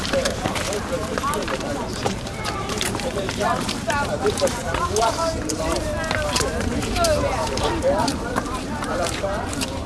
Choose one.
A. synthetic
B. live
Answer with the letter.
A